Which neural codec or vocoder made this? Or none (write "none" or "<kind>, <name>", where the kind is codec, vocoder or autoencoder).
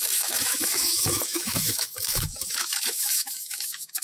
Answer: autoencoder, DAC-VAE